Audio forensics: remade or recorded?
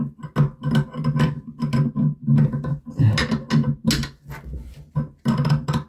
recorded